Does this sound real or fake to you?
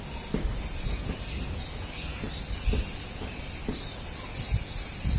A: real